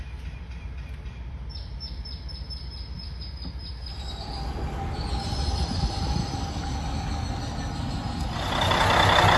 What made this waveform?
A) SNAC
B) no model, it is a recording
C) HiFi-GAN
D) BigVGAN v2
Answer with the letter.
D